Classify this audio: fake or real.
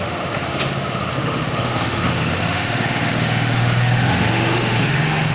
fake